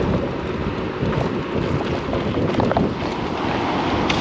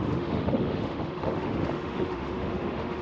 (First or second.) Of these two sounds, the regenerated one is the second